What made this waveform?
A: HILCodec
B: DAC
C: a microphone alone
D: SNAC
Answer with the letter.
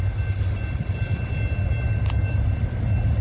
C